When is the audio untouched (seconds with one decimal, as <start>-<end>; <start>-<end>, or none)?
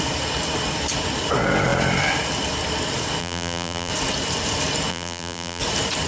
0.0-3.2; 3.9-4.9; 5.6-6.1